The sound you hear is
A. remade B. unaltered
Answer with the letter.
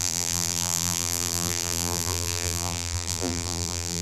A